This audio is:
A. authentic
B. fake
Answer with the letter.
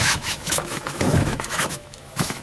B